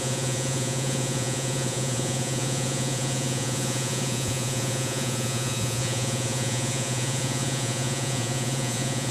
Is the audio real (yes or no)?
no